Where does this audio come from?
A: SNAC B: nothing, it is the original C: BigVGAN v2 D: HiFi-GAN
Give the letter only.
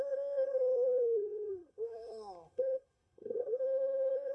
A